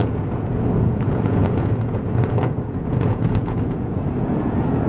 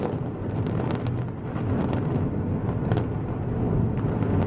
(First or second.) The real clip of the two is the second